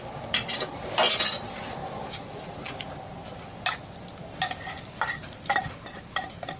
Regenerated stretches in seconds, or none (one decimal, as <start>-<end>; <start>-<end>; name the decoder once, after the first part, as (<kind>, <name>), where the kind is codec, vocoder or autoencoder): none